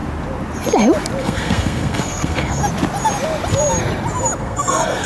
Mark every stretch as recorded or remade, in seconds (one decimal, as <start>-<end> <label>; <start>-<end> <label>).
0.0-1.2 recorded; 1.2-2.6 remade; 2.6-4.4 recorded; 4.4-5.1 remade